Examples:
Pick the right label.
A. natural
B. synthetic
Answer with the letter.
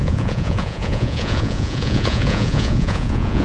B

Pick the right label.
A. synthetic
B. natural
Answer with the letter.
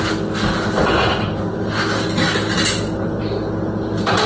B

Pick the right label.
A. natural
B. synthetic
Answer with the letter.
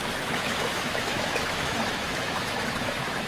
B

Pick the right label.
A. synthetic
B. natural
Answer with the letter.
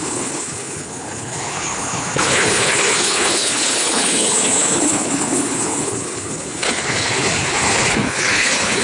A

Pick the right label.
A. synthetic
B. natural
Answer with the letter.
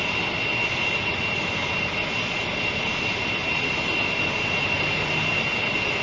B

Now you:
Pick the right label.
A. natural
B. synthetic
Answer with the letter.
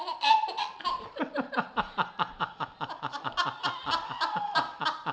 B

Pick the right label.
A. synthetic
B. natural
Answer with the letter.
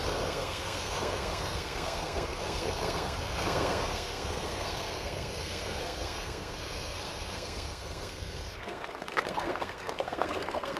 A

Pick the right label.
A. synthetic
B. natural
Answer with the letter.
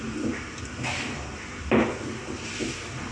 B